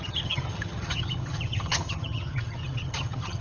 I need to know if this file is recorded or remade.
remade